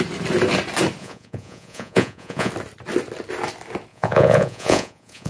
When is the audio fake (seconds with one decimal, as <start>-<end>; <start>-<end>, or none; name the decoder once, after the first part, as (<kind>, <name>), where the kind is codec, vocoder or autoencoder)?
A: 1.0-2.5 (vocoder, Vocos); 3.9-5.3